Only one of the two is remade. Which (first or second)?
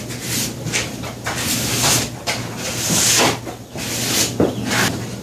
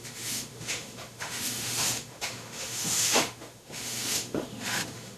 second